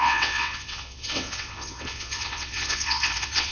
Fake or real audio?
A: fake